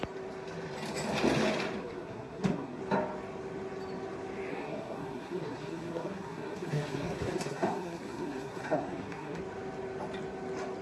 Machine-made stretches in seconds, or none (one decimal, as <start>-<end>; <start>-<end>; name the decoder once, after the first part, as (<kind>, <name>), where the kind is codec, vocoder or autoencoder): 1.8-2.8 (codec, SNAC); 4.5-9.4

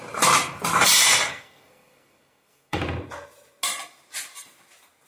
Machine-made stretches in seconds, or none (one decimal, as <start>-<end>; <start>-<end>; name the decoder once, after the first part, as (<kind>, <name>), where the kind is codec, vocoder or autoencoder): 1.3-2.8 (codec, SNAC)

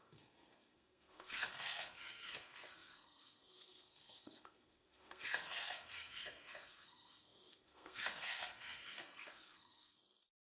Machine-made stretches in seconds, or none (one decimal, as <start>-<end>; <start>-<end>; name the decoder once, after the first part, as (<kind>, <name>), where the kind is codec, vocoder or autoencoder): 0.0-10.5 (codec, SNAC)

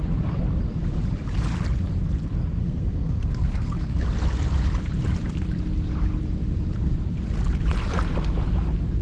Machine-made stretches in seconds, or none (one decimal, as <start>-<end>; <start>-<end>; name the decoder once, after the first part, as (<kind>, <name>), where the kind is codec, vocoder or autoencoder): 2.6-4.0 (codec, SNAC)

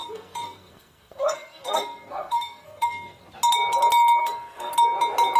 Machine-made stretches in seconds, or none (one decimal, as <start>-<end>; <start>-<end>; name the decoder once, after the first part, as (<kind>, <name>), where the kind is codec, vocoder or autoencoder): 0.0-3.2 (codec, SNAC); 4.2-4.7